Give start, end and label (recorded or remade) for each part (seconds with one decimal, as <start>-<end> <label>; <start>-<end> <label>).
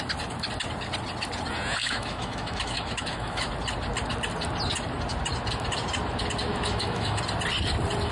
0.0-1.8 recorded; 1.8-3.5 remade; 3.5-6.5 recorded; 6.5-7.2 remade; 7.2-8.1 recorded